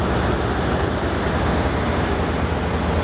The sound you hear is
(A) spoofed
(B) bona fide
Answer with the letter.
B